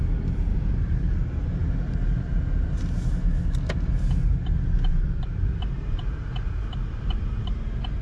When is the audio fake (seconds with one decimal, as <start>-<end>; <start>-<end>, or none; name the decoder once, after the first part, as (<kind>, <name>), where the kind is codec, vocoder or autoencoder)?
0.5-1.1 (vocoder, BigVGAN v2); 4.9-7.6